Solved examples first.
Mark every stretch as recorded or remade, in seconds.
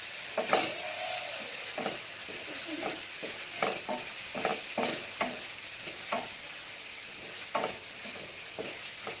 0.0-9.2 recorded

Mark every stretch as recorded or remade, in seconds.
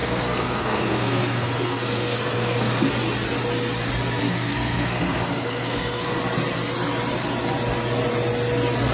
0.0-2.9 remade; 2.9-4.2 recorded; 4.2-6.2 remade; 6.2-8.9 recorded